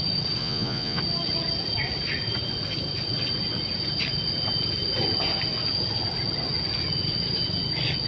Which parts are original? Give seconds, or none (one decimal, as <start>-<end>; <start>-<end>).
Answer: 0.0-0.4; 1.0-8.1